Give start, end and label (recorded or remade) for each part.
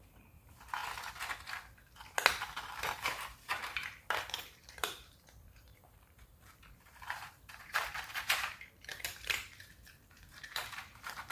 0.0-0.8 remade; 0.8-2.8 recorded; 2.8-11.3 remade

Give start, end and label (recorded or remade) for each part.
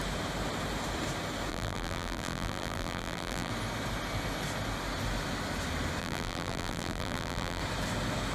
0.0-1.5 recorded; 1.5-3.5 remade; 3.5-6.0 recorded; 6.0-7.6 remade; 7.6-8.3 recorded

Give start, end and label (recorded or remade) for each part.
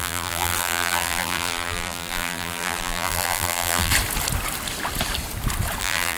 0.0-3.9 remade; 3.9-5.8 recorded; 5.8-6.2 remade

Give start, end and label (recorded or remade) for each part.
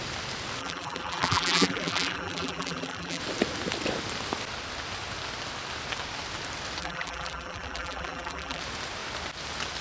0.0-0.6 recorded; 0.6-3.2 remade; 3.2-6.8 recorded; 6.8-8.6 remade; 8.6-9.8 recorded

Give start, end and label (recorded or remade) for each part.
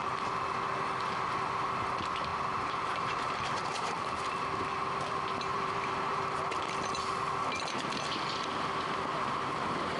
0.0-2.3 recorded; 2.3-4.5 remade; 4.5-5.5 recorded; 5.5-6.6 remade; 6.6-10.0 recorded